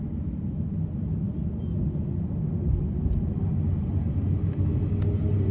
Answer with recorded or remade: recorded